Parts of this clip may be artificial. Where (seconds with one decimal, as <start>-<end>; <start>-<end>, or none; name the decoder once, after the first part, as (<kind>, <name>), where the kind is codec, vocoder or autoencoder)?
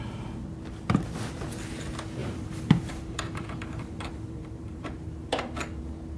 2.2-5.4 (vocoder, BigVGAN v2)